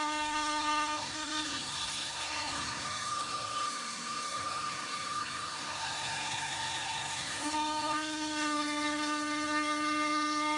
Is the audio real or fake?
fake